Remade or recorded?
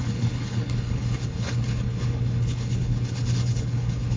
remade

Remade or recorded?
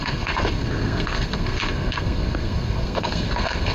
remade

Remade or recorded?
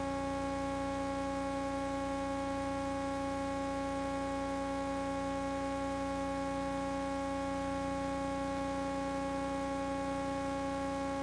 recorded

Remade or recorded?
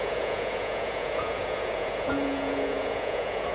remade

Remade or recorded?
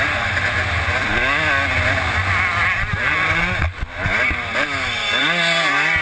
recorded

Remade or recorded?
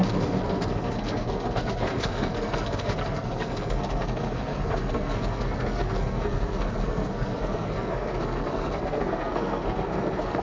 remade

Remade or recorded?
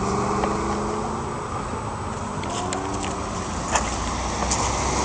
recorded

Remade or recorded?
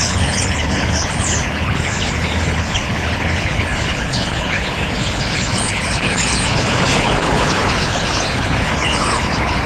remade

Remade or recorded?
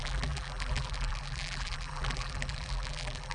remade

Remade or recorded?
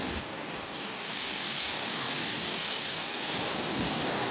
remade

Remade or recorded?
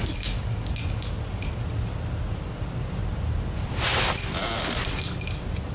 recorded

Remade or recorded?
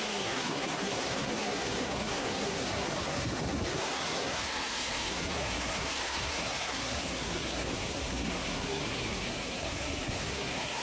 remade